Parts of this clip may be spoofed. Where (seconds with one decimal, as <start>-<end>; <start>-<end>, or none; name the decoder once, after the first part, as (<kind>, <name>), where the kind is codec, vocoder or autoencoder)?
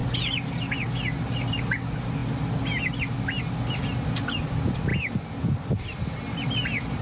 none